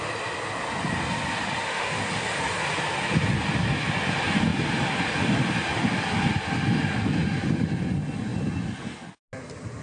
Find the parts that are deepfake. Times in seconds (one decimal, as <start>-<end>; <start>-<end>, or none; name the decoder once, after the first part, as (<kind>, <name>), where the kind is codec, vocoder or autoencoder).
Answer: 1.6-2.3 (autoencoder, DAC-VAE)